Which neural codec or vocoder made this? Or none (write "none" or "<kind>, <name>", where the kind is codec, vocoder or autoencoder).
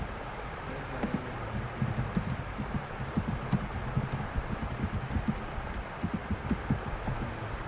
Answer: none